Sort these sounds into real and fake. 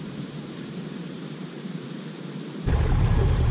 fake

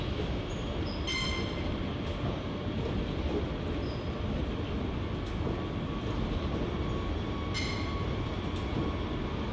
real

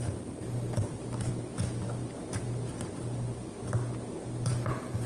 real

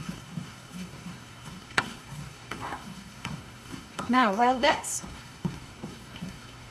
fake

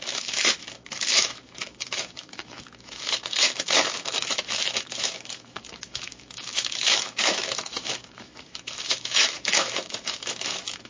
fake